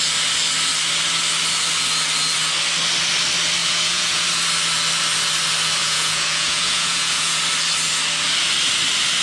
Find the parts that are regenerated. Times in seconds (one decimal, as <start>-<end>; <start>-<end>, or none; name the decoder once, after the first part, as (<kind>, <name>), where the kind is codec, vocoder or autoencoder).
3.6-4.2 (vocoder, Vocos); 5.8-7.4